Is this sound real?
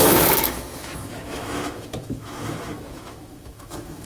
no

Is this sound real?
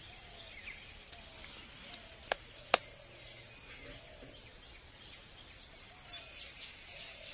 yes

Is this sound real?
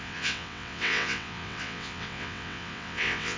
no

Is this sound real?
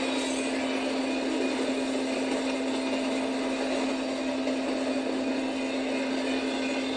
yes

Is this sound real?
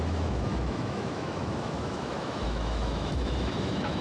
no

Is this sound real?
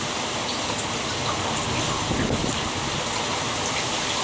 yes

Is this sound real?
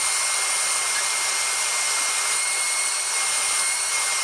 yes